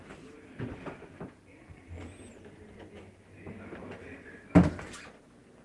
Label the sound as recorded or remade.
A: recorded